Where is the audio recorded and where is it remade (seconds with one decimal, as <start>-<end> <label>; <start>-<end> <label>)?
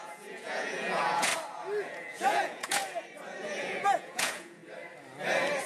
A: 0.0-1.3 remade; 1.3-1.9 recorded; 1.9-2.8 remade; 2.8-3.4 recorded; 3.4-4.6 remade; 4.6-5.7 recorded